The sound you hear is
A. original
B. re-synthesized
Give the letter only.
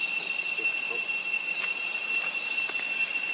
A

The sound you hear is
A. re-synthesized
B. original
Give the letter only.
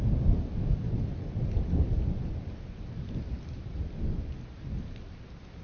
B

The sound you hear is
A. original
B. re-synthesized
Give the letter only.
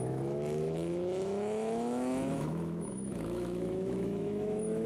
B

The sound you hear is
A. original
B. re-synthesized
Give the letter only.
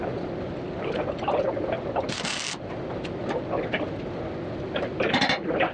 A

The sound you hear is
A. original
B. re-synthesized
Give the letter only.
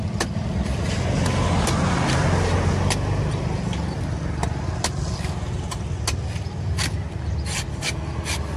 A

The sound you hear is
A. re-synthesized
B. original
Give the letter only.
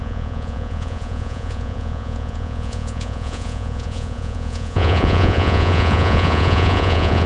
A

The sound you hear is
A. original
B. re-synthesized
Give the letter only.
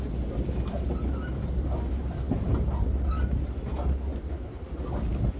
A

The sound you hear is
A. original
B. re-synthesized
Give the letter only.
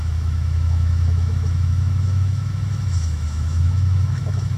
B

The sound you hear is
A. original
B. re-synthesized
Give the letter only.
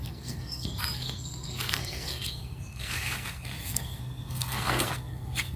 B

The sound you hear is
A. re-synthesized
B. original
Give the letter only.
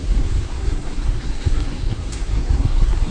A